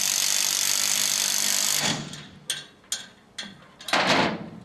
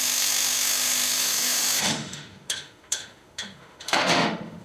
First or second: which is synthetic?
second